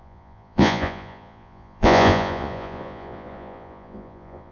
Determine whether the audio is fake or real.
fake